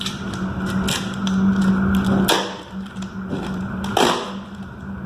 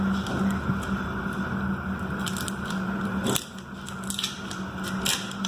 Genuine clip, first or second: first